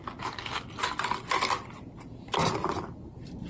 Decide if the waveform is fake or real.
real